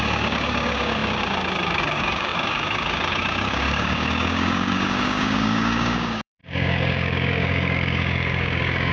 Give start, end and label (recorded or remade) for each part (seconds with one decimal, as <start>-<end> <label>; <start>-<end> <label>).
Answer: 0.0-8.9 remade